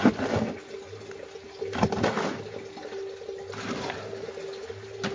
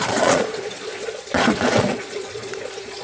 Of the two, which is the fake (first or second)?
second